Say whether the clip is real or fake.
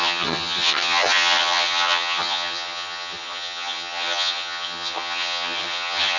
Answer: fake